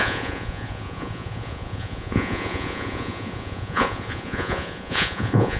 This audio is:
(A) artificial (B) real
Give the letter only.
A